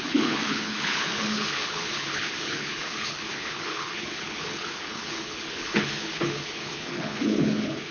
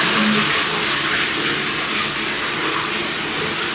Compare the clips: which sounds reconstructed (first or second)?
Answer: first